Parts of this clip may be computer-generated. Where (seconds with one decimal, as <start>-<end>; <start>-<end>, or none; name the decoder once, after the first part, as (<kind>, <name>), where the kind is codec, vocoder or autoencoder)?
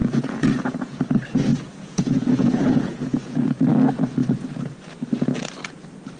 0.0-0.9 (vocoder, Vocos); 1.5-3.6; 4.2-4.8